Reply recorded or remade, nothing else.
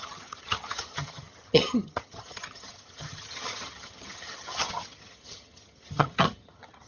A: remade